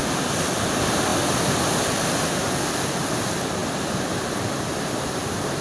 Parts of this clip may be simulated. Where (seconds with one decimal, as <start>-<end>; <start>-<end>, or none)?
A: 0.7-1.1; 1.9-3.6; 4.2-5.6